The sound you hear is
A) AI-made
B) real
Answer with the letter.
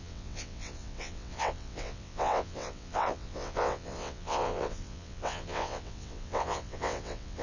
A